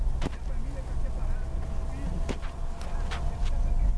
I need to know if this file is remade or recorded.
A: recorded